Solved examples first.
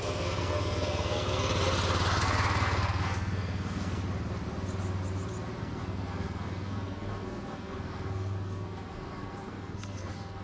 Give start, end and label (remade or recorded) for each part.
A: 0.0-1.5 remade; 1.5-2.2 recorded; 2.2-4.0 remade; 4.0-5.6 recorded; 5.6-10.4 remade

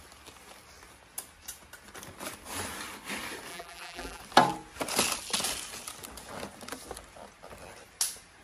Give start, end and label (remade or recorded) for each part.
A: 0.0-3.5 recorded; 3.5-4.2 remade; 4.2-8.4 recorded

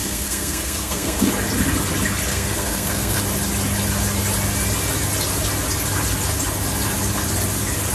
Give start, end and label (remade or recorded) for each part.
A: 0.0-1.3 remade; 1.3-2.3 recorded; 2.3-3.2 remade; 3.2-7.9 recorded

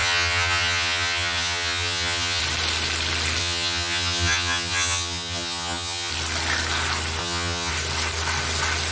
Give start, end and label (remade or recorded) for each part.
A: 0.0-2.4 remade; 2.4-3.4 recorded; 3.4-6.1 remade; 6.1-7.2 recorded; 7.2-7.7 remade; 7.7-8.9 recorded